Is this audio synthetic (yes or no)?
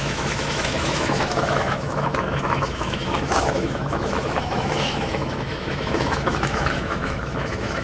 yes